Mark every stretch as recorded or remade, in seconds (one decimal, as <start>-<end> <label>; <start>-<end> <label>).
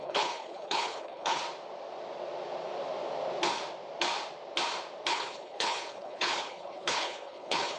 0.0-1.4 remade; 1.4-5.1 recorded; 5.1-7.8 remade